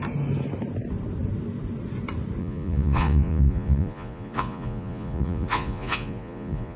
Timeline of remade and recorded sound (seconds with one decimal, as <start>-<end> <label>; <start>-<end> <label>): 0.0-2.4 recorded; 2.4-6.8 remade